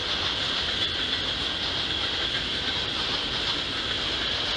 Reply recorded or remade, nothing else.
recorded